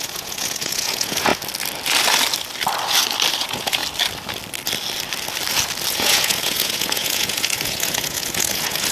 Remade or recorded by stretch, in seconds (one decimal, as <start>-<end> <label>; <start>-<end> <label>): 0.0-1.3 remade; 1.3-3.4 recorded; 3.4-3.8 remade; 3.8-5.9 recorded; 5.9-8.9 remade